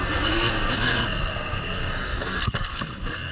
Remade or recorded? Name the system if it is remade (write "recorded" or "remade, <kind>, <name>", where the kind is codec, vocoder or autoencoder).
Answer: remade, codec, SNAC